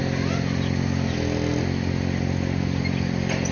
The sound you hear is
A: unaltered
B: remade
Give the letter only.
A